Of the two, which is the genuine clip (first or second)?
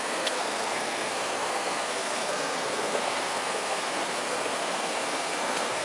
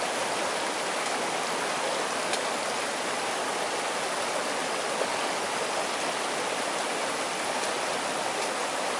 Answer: second